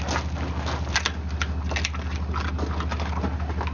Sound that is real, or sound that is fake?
real